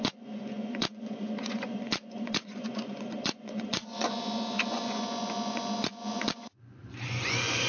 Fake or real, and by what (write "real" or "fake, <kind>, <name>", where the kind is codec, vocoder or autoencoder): fake, vocoder, Vocos